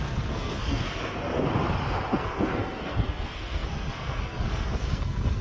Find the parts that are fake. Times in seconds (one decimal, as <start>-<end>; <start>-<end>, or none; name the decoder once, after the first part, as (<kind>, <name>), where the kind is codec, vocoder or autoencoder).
0.0-1.3 (codec, SNAC); 2.1-5.4